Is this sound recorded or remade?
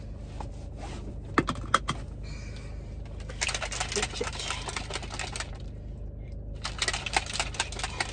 recorded